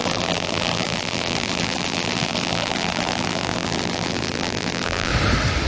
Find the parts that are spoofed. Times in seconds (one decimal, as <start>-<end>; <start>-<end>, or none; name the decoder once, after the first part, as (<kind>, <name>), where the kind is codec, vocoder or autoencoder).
0.0-5.1 (vocoder, BigVGAN v2)